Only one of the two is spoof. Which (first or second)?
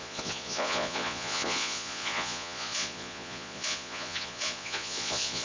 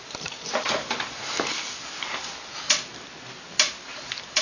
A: first